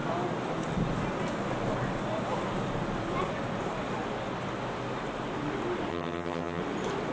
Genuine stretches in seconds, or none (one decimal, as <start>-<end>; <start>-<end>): 0.0-5.9; 6.6-7.1